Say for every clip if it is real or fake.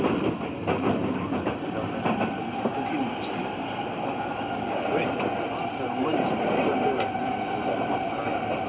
real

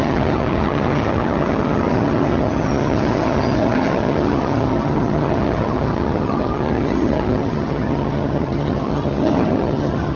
fake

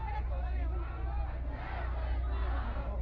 real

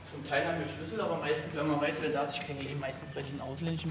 real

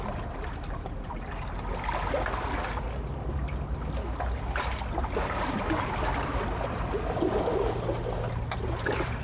real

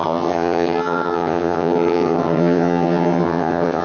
fake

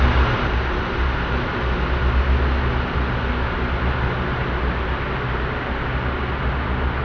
real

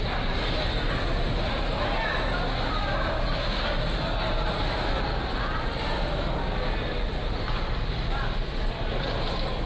real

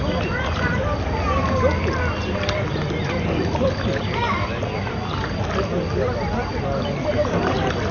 real